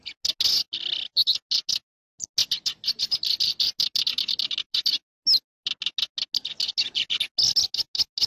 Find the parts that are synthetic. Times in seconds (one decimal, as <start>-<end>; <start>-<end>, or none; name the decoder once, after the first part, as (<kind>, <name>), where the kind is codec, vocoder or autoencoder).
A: none

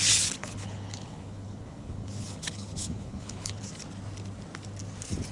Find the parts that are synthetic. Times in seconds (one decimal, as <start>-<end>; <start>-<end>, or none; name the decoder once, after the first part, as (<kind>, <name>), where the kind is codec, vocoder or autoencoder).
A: 0.4-3.6 (codec, HILCodec)

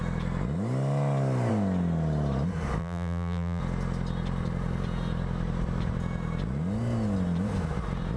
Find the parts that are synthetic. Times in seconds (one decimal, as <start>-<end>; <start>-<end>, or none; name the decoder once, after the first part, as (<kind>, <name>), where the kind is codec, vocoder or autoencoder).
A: 2.8-3.6 (vocoder, BigVGAN v2)

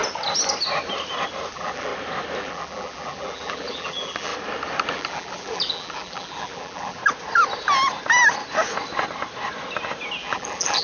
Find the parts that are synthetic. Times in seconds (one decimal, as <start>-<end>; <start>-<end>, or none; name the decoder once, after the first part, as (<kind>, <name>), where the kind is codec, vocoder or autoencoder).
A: 1.5-1.9 (vocoder, BigVGAN v2); 2.4-4.3; 4.9-7.0; 10.2-10.8